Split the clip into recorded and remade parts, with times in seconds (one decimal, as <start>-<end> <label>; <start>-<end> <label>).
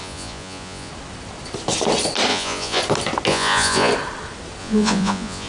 0.0-0.9 remade; 0.9-2.3 recorded; 2.3-2.8 remade; 2.8-3.3 recorded; 3.3-3.9 remade; 3.9-4.6 recorded; 4.6-5.5 remade